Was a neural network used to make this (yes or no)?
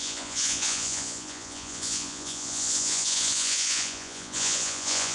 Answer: yes